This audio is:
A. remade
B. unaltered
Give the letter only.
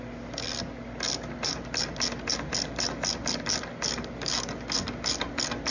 B